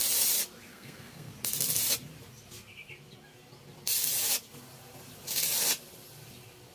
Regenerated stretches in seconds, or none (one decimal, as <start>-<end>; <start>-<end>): 0.7-1.3